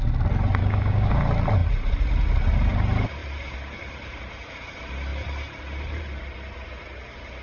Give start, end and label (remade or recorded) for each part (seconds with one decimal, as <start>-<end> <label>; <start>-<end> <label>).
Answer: 0.0-0.6 recorded; 0.6-1.1 remade; 1.1-7.4 recorded